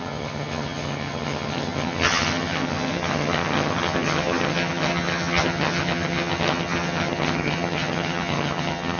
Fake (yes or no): yes